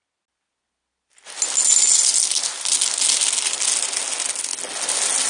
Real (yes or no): yes